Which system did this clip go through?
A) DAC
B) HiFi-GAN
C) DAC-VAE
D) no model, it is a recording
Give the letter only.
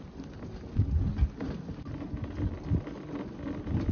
D